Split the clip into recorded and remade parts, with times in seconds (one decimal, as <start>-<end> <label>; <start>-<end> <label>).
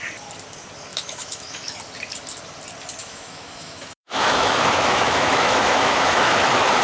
0.0-0.9 recorded; 0.9-1.8 remade; 1.8-3.0 recorded; 3.0-6.8 remade